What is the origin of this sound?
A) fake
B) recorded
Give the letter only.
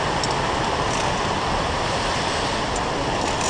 B